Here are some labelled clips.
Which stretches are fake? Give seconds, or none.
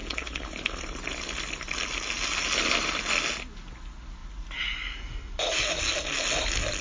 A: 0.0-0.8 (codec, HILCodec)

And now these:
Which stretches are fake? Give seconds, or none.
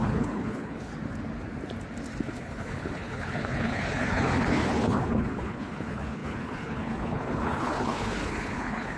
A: 0.0-0.9 (codec, HILCodec); 2.2-9.0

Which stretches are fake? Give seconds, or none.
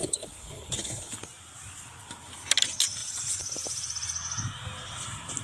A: 0.0-1.2 (codec, HILCodec)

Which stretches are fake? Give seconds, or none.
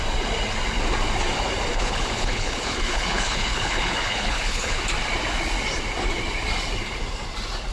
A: 1.7-4.8 (codec, HILCodec)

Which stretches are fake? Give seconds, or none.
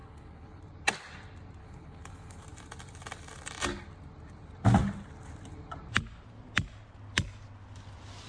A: 0.0-0.6 (codec, HILCodec); 1.6-2.4